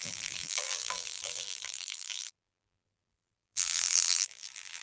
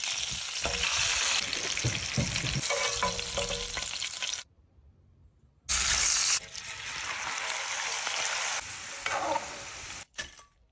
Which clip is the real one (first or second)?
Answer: second